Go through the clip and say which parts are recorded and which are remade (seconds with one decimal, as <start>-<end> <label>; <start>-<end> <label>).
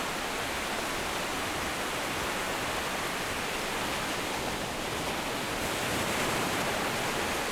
0.0-7.5 remade